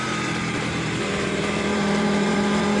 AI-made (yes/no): yes